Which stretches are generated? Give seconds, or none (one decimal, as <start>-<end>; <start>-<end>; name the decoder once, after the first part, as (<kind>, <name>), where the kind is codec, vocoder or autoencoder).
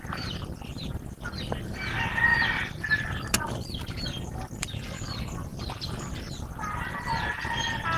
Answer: none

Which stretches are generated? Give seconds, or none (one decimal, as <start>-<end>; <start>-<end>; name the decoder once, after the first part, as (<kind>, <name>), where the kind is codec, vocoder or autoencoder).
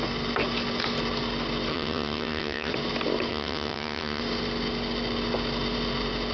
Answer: 1.7-2.7 (vocoder, HiFi-GAN); 3.3-4.2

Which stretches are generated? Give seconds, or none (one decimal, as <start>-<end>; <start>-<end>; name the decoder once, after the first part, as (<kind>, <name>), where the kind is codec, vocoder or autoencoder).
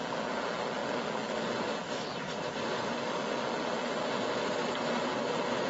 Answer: none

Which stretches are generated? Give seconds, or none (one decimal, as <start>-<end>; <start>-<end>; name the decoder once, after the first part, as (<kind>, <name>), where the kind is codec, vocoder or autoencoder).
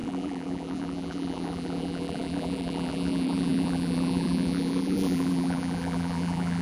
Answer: 0.0-6.6 (vocoder, BigVGAN v2)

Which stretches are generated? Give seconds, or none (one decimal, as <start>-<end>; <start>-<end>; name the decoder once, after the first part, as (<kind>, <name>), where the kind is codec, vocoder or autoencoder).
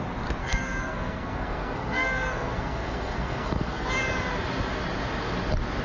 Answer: 0.4-3.9 (codec, SNAC)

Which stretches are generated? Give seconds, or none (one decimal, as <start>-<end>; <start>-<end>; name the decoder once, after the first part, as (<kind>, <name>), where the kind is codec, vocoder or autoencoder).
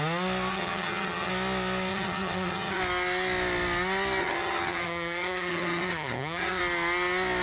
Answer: 0.5-1.3 (vocoder, HiFi-GAN); 1.9-2.8; 4.2-6.6